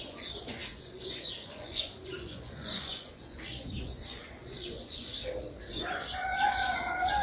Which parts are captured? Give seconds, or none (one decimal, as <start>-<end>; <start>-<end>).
5.1-5.7